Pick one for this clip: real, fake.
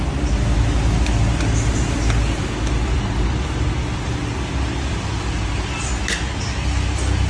real